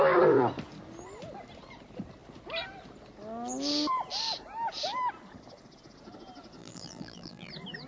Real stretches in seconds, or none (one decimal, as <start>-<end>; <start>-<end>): 0.0-6.6; 7.5-7.9